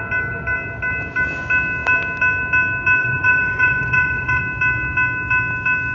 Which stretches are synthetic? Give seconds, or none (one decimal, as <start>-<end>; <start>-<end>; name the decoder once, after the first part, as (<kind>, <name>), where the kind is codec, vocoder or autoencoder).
3.0-4.4 (vocoder, Vocos)